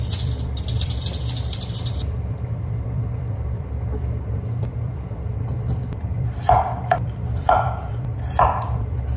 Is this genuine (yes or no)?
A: no